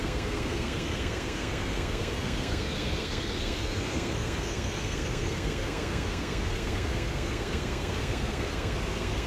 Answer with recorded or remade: remade